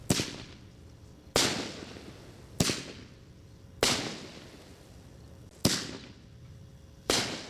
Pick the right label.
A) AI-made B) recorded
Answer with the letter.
B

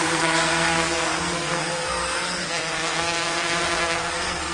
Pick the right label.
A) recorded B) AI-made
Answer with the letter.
B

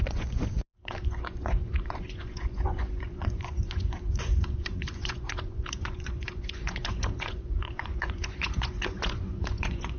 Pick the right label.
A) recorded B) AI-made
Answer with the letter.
B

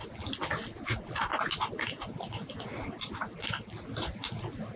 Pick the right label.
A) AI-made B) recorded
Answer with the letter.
B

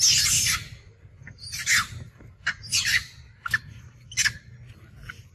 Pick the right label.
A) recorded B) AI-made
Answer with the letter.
A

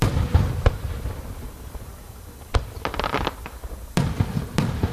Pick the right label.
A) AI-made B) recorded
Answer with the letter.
B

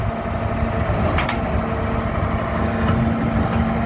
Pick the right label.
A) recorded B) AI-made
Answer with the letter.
A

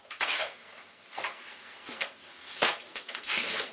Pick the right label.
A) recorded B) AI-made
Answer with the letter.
B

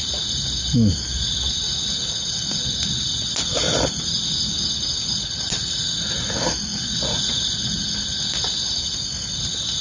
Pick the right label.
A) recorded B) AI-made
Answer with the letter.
A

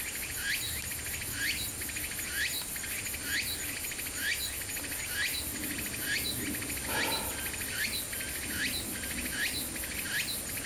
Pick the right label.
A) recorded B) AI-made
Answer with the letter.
A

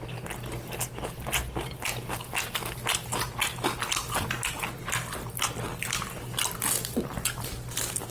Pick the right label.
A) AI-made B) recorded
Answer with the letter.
B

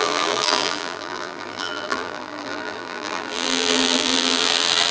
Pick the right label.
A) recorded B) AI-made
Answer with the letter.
B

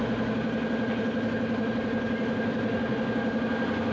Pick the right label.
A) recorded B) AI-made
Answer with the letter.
A